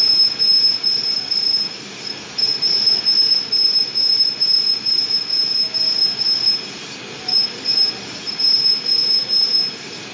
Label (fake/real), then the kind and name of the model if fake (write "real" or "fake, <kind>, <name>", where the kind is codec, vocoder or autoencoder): real